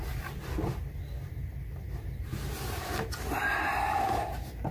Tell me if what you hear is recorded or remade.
recorded